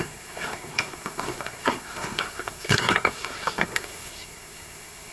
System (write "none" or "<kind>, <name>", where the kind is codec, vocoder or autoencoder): codec, SNAC